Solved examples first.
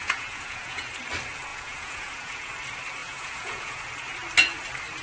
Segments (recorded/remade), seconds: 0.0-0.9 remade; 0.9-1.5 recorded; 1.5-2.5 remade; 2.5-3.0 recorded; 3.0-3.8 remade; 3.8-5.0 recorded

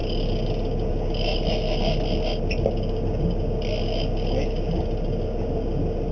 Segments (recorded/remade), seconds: 0.0-6.1 recorded